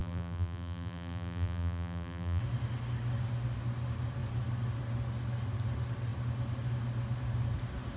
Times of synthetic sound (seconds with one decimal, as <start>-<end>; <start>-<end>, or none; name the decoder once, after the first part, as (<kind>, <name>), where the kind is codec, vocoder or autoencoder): 0.0-2.4 (vocoder, BigVGAN v2)